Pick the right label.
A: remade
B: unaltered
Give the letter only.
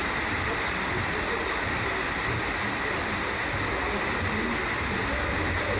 B